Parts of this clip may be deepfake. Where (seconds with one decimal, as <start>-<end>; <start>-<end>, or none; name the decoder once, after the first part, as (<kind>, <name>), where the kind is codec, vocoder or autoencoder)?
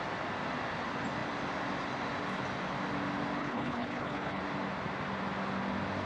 3.4-4.4 (codec, HILCodec)